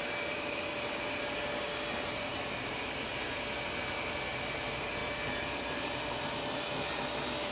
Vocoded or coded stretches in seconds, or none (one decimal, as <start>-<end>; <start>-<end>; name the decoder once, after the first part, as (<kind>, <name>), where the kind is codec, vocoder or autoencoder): 5.0-6.2 (vocoder, BigVGAN v2)